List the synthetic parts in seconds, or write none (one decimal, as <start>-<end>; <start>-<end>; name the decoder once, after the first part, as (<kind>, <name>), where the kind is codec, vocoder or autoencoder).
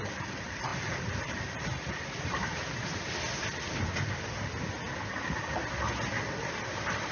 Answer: 0.0-2.4 (vocoder, BigVGAN v2); 6.4-7.1